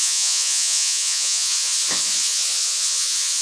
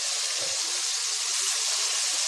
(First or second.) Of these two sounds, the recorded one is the second